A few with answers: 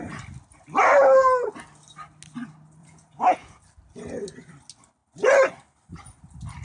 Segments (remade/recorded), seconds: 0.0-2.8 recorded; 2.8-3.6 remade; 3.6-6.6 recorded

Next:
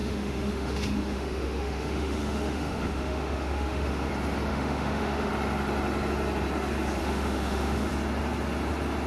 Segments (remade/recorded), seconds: 0.0-4.1 remade; 4.1-4.5 recorded; 4.5-5.3 remade; 5.3-7.0 recorded; 7.0-7.9 remade; 7.9-9.1 recorded

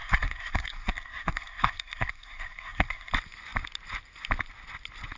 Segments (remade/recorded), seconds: 0.0-3.1 remade; 3.1-5.2 recorded

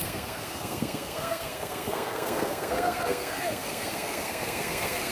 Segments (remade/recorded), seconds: 0.0-5.1 remade

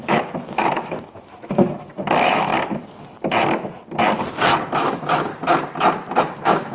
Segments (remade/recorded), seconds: 0.0-2.5 remade; 2.5-4.7 recorded; 4.7-5.3 remade; 5.3-6.3 recorded; 6.3-6.7 remade